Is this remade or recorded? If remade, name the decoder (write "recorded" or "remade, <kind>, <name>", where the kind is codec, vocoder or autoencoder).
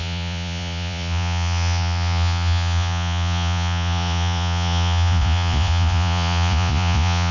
remade, vocoder, Vocos